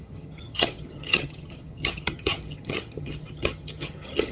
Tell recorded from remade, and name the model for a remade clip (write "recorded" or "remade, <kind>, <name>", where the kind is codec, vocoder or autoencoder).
remade, vocoder, HiFi-GAN